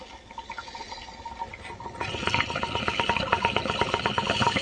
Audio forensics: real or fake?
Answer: real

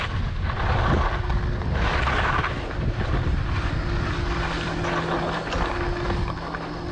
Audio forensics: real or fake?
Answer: real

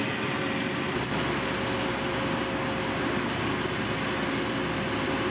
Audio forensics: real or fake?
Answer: real